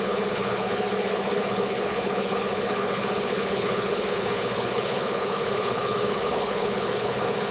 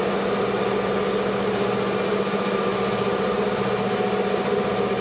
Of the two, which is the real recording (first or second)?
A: second